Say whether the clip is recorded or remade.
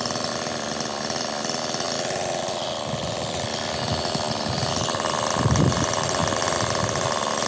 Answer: recorded